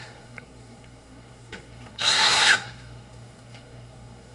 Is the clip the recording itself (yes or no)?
no